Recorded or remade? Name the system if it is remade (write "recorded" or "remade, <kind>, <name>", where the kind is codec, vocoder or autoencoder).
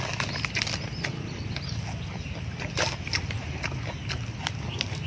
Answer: recorded